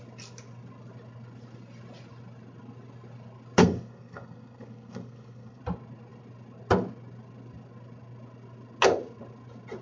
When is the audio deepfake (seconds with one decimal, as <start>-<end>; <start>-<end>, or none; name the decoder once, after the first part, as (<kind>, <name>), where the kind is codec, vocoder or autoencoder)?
3.6-5.6 (codec, SNAC)